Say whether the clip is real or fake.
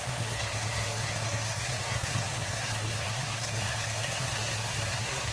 fake